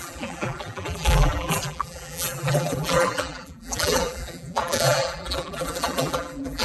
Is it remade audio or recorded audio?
remade